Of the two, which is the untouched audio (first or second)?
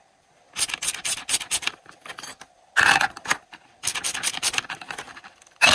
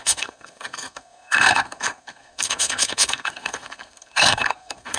first